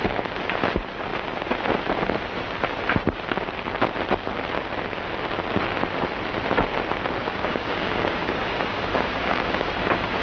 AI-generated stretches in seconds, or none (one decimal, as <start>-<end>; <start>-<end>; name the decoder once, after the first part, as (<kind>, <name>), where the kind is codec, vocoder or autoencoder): 7.2-10.2 (codec, DAC)